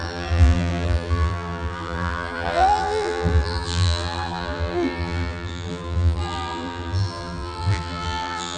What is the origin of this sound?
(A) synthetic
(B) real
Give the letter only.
A